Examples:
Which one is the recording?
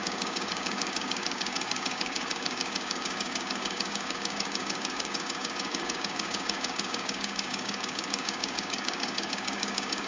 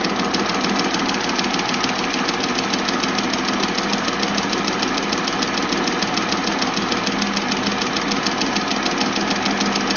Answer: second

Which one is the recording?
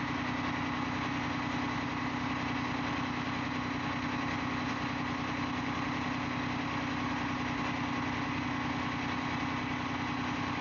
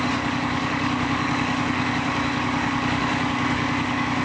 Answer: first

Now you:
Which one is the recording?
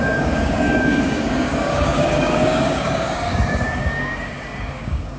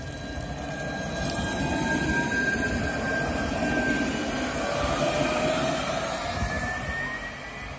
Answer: second